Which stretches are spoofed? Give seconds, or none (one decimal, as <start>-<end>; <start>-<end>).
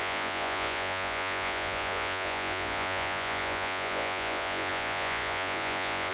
0.0-6.1